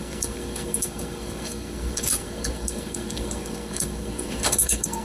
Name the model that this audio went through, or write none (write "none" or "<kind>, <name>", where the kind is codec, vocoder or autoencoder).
codec, SNAC